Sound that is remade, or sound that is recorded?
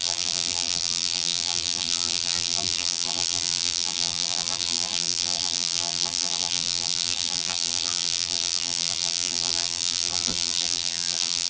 remade